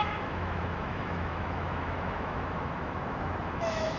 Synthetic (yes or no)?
yes